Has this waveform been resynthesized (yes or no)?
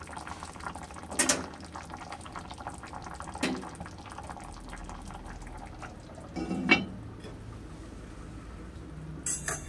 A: no